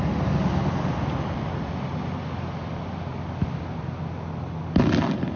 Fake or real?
real